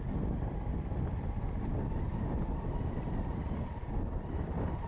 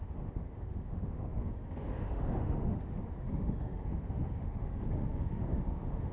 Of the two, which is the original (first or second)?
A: first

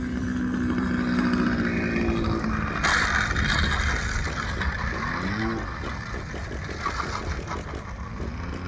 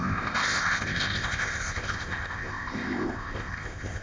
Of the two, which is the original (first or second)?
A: first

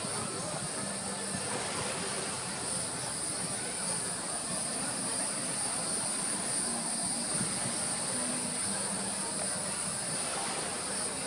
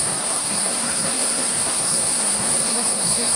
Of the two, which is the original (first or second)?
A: first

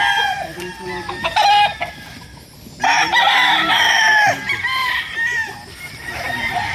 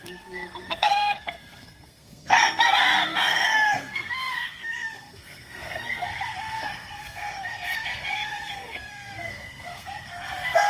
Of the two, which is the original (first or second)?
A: first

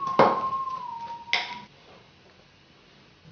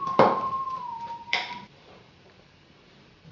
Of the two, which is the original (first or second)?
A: first